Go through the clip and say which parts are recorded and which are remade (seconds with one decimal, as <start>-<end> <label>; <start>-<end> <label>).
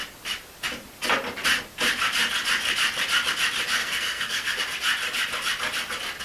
0.0-3.8 recorded; 3.8-4.6 remade; 4.6-6.2 recorded